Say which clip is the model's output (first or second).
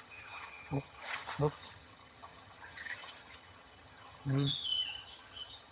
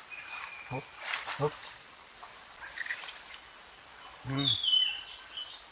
first